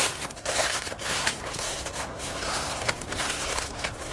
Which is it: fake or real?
fake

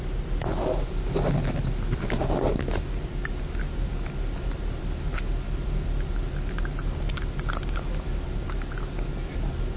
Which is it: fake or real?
real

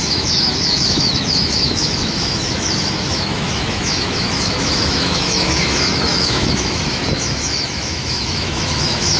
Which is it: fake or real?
fake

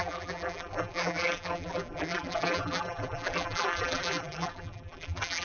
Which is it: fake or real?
fake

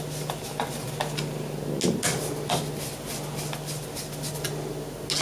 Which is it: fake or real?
real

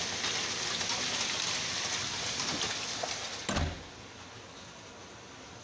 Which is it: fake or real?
real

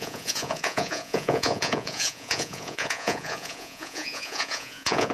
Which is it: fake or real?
fake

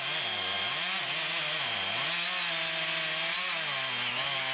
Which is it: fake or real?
real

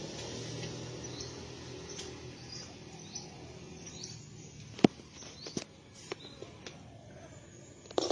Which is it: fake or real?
real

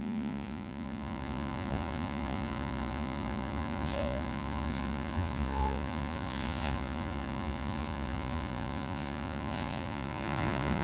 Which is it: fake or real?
fake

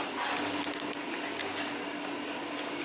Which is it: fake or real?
real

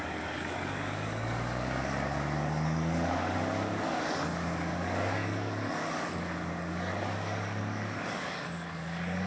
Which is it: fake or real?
fake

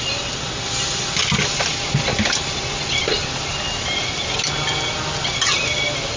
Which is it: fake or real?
real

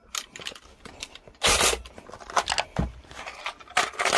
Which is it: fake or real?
real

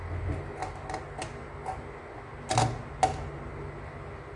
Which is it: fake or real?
real